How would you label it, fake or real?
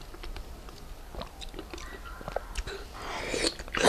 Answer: real